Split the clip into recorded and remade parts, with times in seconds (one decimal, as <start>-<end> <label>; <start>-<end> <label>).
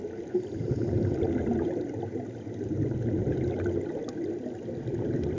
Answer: 0.0-5.4 recorded